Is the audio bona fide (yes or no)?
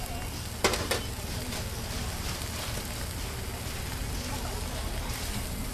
yes